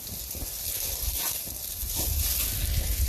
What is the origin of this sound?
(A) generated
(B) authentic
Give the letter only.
B